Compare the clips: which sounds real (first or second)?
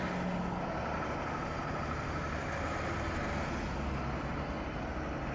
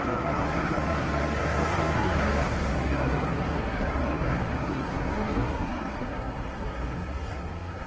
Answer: first